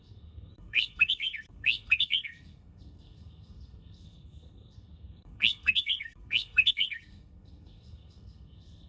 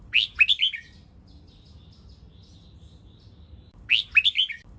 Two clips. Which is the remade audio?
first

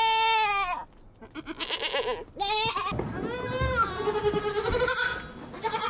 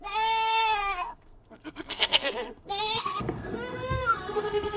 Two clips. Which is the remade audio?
second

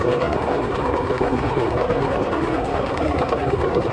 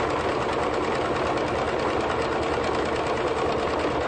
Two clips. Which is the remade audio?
first